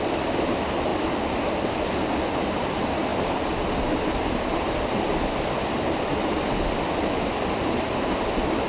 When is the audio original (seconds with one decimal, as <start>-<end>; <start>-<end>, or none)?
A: 0.0-8.7